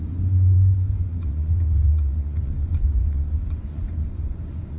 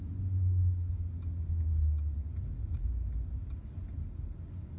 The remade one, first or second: first